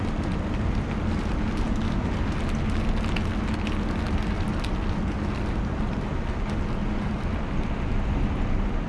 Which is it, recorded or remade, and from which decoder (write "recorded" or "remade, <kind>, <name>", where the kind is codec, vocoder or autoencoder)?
recorded